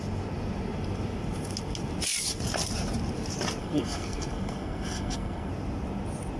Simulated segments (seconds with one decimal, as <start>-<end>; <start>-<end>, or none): 3.6-5.5